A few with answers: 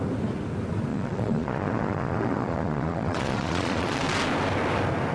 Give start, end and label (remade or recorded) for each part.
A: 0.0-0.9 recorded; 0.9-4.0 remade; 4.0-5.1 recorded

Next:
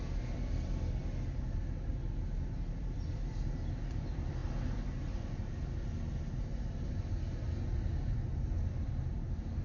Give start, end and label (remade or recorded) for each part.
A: 0.0-9.6 recorded

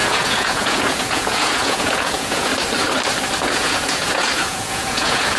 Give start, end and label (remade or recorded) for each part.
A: 0.0-2.5 remade; 2.5-3.4 recorded; 3.4-5.4 remade

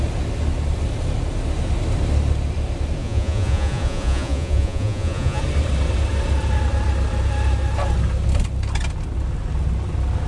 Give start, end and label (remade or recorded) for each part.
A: 0.0-3.0 recorded; 3.0-5.4 remade; 5.4-10.3 recorded

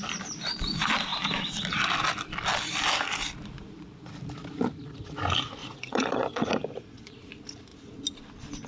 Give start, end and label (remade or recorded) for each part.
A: 0.0-5.6 recorded; 5.6-7.2 remade; 7.2-8.7 recorded

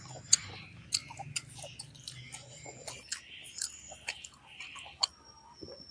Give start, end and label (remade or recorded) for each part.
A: 0.0-5.9 recorded

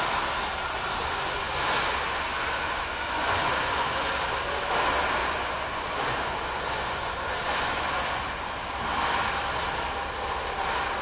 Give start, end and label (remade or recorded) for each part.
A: 0.0-1.0 recorded; 1.0-4.1 remade; 4.1-5.2 recorded; 5.2-8.5 remade; 8.5-11.0 recorded